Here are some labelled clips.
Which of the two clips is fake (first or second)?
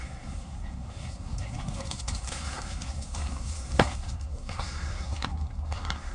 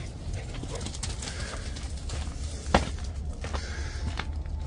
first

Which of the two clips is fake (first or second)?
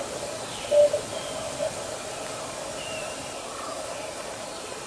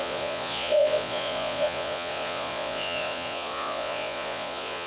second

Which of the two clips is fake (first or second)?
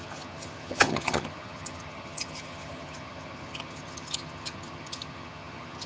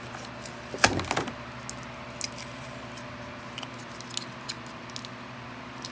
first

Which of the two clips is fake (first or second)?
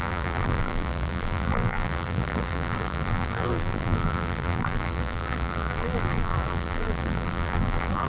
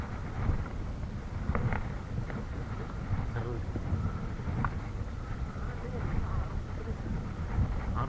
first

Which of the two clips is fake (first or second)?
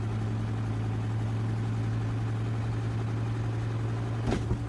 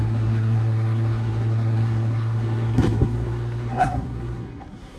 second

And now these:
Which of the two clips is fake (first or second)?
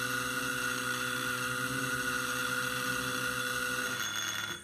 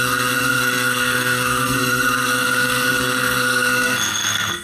second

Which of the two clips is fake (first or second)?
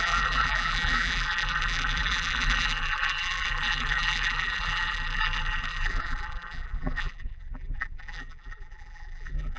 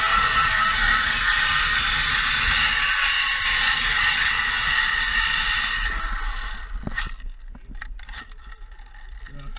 first